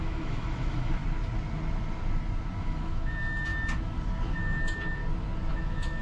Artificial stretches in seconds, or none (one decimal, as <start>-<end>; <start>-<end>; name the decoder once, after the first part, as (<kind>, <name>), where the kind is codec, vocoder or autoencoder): 0.0-1.0 (autoencoder, DAC-VAE); 2.6-3.5; 4.4-5.0; 5.5-6.0